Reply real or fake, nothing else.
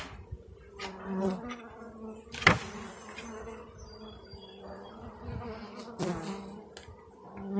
real